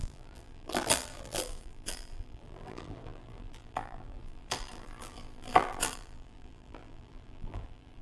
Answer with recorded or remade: remade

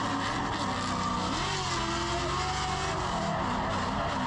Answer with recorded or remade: recorded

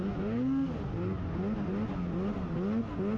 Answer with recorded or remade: recorded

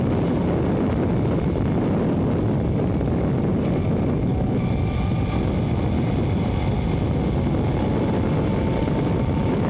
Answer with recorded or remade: recorded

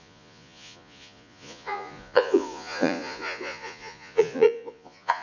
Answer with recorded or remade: remade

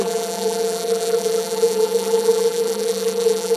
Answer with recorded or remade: remade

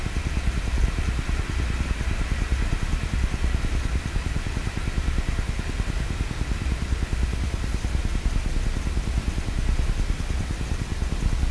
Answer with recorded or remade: recorded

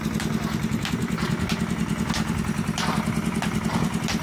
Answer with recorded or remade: remade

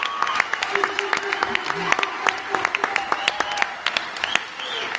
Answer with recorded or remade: recorded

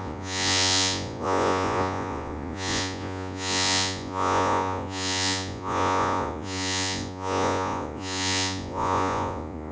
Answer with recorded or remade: remade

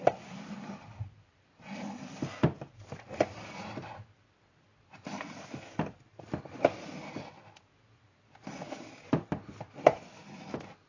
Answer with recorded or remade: recorded